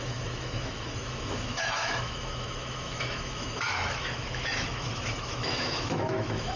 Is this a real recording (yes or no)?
no